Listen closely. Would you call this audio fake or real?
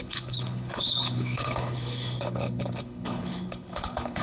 fake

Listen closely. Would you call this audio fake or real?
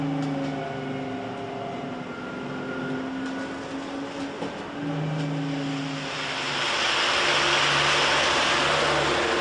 real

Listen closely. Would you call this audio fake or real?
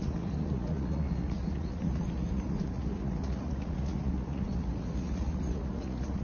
fake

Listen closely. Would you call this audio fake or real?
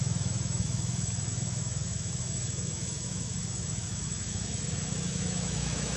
fake